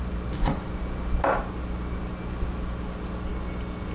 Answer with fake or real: real